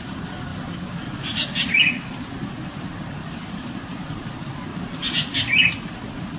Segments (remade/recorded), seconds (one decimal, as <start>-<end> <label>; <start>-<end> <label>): 0.0-3.2 recorded; 3.2-4.1 remade; 4.1-6.4 recorded